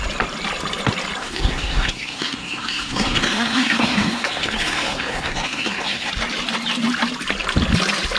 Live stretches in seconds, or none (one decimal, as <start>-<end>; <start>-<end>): 0.0-1.2; 6.1-8.2